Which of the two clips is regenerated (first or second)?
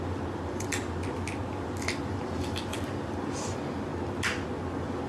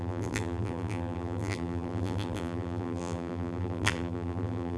second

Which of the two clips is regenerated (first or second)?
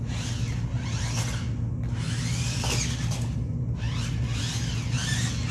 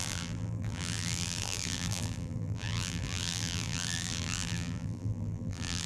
second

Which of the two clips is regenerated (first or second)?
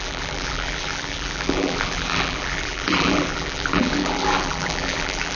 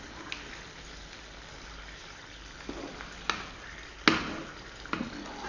first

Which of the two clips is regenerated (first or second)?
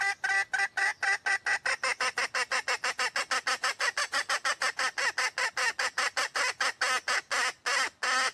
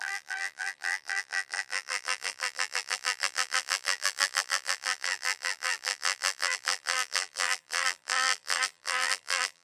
second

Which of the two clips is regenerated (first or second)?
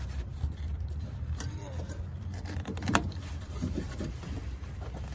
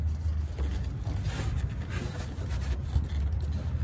first